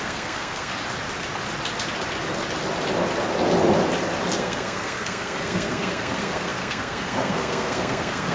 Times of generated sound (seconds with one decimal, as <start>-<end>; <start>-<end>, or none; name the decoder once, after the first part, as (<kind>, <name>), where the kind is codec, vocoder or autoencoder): 0.0-0.7 (codec, SNAC); 4.4-8.3

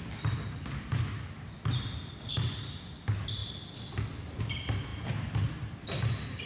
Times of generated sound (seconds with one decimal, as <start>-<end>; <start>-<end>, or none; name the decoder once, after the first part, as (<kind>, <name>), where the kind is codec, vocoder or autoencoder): none

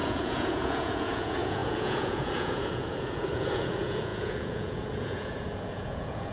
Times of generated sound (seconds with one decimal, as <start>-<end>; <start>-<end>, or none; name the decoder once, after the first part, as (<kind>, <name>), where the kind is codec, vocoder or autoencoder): 0.0-6.3 (vocoder, Vocos)

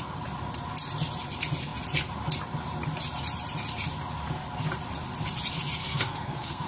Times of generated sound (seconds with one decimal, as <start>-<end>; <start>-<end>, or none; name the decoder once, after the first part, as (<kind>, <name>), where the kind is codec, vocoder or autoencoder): 5.8-6.7 (codec, SNAC)

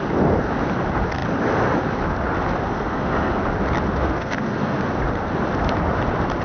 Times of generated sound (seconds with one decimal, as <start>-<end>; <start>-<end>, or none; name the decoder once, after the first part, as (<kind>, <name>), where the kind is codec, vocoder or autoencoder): 2.7-3.4 (codec, SNAC); 4.0-4.8

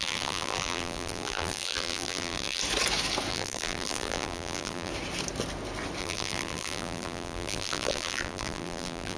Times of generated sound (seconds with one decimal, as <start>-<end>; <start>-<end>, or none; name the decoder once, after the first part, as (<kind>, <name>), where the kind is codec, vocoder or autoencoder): 0.0-2.6 (vocoder, BigVGAN v2); 3.3-4.9; 6.0-9.2

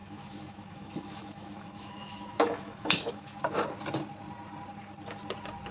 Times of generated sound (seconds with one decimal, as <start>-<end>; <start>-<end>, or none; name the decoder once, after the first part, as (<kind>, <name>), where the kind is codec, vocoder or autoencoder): 0.0-3.4 (autoencoder, DAC-VAE)